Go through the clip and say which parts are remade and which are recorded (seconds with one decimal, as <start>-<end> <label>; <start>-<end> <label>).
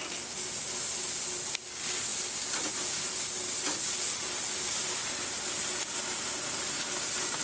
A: 0.0-7.4 recorded